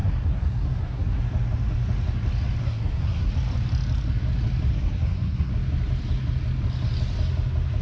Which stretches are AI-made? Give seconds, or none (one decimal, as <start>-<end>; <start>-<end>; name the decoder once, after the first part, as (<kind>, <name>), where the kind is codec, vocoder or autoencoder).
0.0-1.2 (codec, SNAC); 2.6-3.3; 4.7-5.5